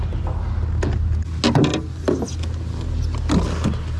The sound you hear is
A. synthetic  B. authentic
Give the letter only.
B